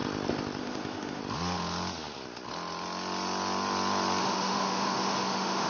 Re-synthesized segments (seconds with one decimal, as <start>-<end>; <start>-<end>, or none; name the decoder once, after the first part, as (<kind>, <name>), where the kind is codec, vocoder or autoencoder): 0.6-1.2 (autoencoder, DAC-VAE); 4.2-5.7